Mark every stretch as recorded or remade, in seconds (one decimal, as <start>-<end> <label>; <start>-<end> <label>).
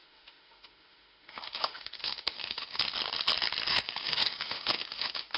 0.0-2.8 remade; 2.8-3.7 recorded; 3.7-5.4 remade